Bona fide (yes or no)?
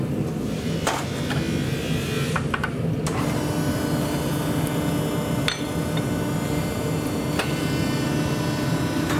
yes